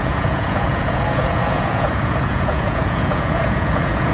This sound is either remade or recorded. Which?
remade